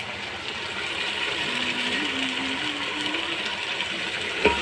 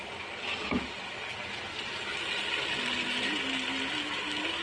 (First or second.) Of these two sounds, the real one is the second